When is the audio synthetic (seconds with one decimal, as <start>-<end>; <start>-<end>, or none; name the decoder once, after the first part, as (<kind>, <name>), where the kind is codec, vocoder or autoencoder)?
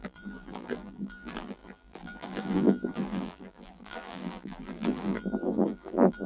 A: 0.0-6.3 (vocoder, BigVGAN v2)